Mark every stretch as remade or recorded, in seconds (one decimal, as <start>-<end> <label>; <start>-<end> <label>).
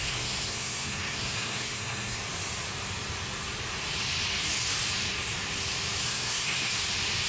0.0-2.2 remade; 2.2-6.0 recorded; 6.0-6.7 remade; 6.7-7.3 recorded